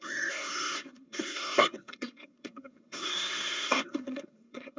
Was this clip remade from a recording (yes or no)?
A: yes